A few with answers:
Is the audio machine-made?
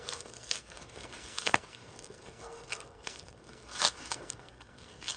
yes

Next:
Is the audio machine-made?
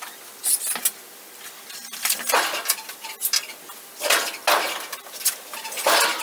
no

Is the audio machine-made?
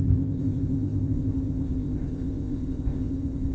yes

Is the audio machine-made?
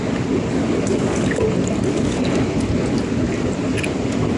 no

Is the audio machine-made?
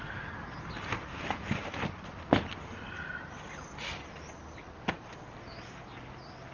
no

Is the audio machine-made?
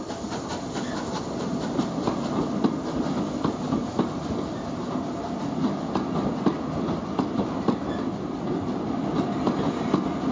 no